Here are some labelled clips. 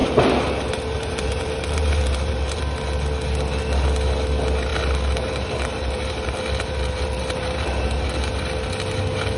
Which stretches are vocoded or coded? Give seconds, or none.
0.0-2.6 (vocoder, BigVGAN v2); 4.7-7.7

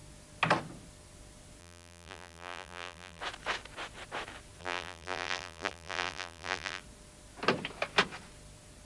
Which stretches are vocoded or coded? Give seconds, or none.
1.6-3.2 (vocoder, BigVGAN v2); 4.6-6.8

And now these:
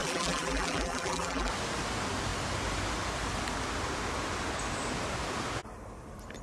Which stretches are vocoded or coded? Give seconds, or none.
0.0-1.5 (vocoder, BigVGAN v2)

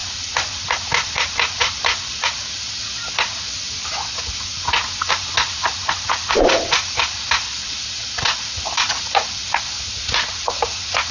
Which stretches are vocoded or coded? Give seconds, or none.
0.0-2.4 (vocoder, BigVGAN v2); 5.8-9.6

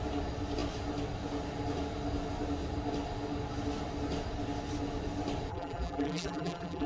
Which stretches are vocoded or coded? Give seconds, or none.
5.5-6.9 (vocoder, BigVGAN v2)